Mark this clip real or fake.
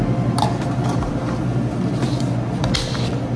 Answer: real